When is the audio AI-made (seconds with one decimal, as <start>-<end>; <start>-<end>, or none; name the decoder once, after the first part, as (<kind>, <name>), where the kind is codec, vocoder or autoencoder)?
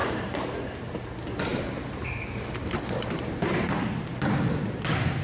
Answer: 0.0-0.7 (vocoder, BigVGAN v2); 1.5-3.3